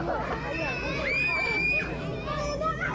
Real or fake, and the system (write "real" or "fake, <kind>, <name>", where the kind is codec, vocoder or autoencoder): real